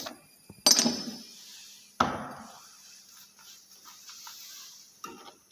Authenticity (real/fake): real